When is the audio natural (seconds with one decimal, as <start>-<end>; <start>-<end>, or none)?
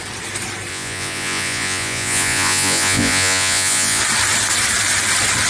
0.0-0.7; 4.0-5.5